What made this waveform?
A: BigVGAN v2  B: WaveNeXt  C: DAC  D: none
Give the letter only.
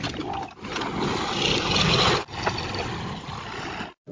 D